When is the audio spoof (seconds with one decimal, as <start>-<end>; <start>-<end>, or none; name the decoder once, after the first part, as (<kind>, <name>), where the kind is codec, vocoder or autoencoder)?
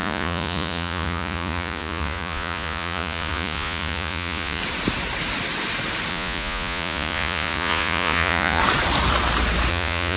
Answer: 0.0-4.6 (vocoder, Vocos); 6.1-8.6; 9.7-10.2